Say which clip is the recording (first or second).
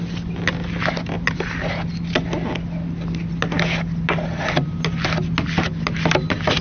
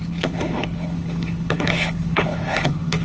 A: first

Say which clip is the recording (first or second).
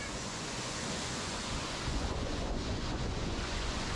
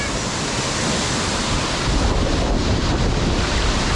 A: second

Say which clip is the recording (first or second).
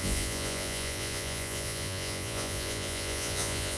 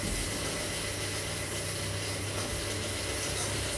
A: second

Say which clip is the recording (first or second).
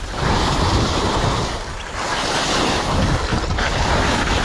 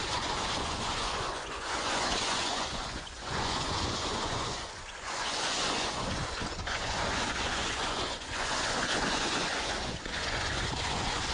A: first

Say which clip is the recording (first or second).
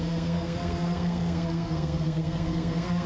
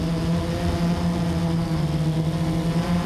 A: second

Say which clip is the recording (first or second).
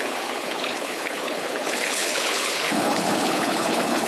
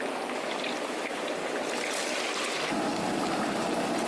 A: second